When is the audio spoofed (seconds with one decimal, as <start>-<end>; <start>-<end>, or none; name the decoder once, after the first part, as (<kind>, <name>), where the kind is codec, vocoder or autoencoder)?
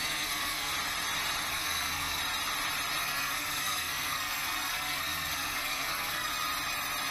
0.0-0.7 (codec, SNAC); 1.5-2.2; 3.0-6.3